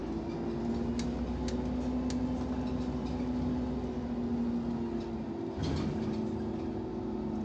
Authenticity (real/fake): real